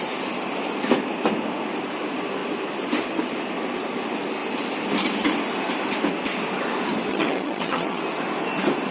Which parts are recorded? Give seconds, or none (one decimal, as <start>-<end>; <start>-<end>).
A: 0.0-7.1; 8.0-8.9